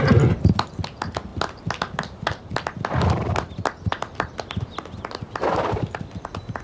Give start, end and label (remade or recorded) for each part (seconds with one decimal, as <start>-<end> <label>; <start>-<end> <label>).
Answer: 0.0-6.6 recorded